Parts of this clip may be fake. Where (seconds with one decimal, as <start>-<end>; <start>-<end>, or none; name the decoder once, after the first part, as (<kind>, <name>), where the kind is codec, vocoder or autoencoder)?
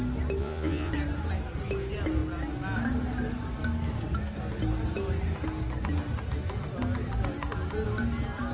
0.4-0.9 (vocoder, Vocos)